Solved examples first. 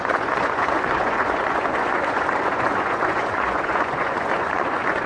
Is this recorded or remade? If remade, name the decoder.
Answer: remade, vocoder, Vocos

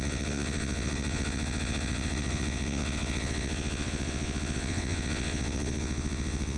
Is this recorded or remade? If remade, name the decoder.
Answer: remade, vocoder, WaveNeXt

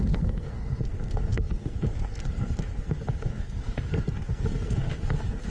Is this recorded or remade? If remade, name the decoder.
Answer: remade, codec, SNAC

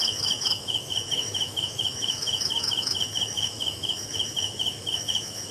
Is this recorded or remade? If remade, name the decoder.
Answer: remade, autoencoder, DAC-VAE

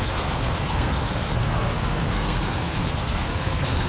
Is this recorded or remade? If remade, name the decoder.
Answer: remade, codec, SNAC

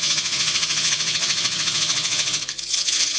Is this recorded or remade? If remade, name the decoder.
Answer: remade, vocoder, Vocos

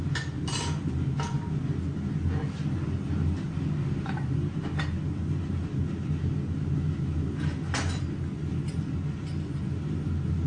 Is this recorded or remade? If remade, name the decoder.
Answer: recorded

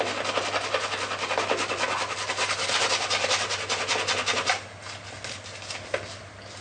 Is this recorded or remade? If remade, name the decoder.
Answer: recorded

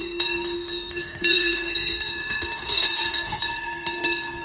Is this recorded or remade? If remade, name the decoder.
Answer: remade, codec, SNAC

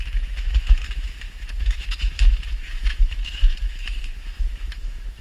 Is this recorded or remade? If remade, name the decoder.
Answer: remade, autoencoder, DAC-VAE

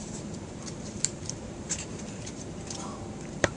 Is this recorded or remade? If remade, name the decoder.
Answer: remade, vocoder, BigVGAN v2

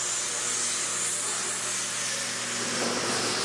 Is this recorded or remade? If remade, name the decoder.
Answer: recorded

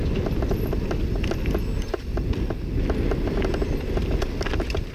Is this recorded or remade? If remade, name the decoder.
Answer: recorded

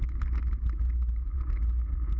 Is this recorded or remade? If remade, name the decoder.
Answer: recorded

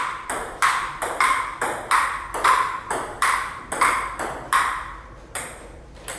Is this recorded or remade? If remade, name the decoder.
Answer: remade, vocoder, BigVGAN v2